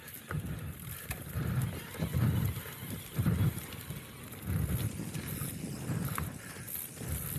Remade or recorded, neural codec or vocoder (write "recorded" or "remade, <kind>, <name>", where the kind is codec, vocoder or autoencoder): recorded